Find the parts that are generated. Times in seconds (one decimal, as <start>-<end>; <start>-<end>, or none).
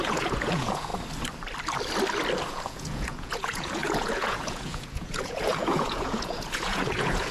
0.0-0.9; 2.5-7.3